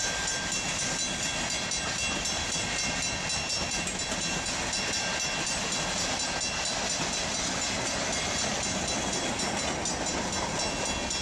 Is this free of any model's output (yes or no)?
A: yes